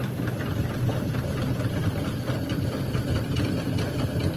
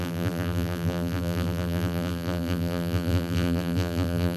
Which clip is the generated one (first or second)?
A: second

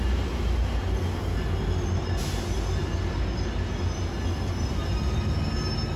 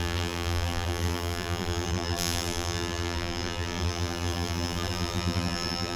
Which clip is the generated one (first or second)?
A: second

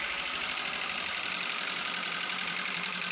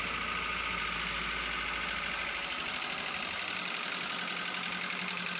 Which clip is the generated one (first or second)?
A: first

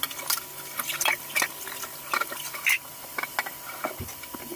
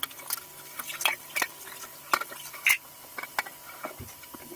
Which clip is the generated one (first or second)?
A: first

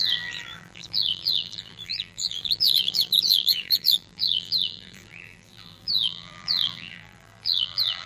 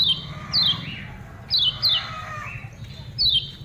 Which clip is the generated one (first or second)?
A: first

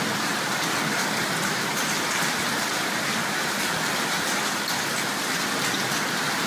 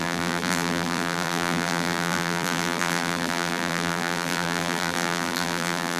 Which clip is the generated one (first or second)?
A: second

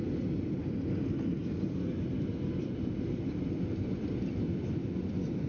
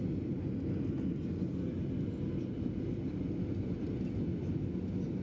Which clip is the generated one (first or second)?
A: first